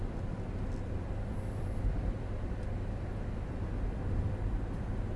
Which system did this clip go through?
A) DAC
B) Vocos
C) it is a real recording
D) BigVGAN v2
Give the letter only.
D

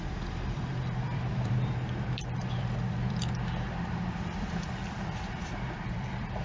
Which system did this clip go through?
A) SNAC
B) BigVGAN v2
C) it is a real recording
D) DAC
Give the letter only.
B